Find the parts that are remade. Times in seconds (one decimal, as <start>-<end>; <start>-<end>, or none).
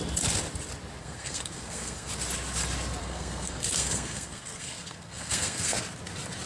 1.0-2.1; 3.0-5.8